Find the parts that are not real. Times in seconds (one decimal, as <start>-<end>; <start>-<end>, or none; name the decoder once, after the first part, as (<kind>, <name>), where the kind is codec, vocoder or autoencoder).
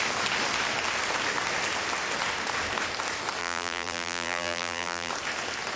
3.4-5.1 (vocoder, BigVGAN v2)